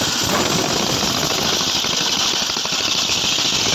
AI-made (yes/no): no